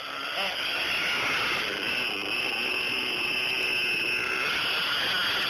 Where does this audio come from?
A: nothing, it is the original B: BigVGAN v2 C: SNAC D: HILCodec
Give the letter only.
A